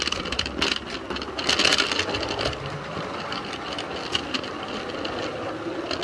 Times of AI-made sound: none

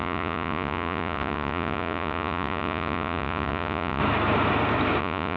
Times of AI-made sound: 0.0-4.0 (vocoder, Vocos); 5.0-5.4

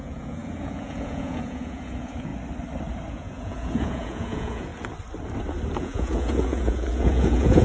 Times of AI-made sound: 0.0-2.3 (vocoder, Vocos); 3.1-4.7; 5.8-7.6

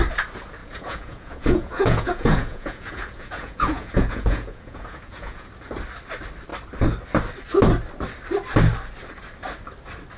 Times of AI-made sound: 0.6-5.5 (vocoder, Vocos)

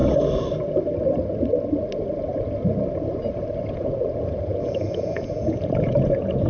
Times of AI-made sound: 3.7-6.5 (vocoder, Vocos)

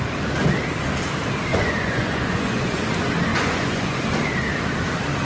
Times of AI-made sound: 1.5-2.9 (vocoder, Vocos); 3.3-4.0